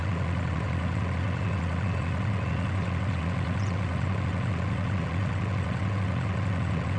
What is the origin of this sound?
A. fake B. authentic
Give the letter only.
A